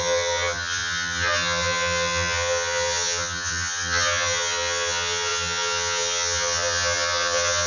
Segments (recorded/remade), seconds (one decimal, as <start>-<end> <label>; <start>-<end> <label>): 0.0-7.7 remade